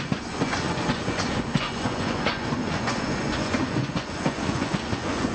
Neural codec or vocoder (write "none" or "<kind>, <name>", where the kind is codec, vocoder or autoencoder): vocoder, Vocos